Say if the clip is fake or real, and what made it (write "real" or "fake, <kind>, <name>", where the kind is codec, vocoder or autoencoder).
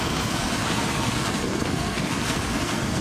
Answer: fake, codec, SNAC